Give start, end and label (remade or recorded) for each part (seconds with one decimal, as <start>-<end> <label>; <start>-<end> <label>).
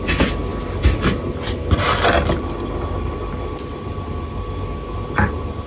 0.0-5.7 recorded